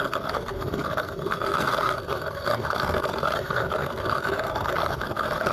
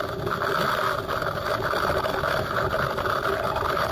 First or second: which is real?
second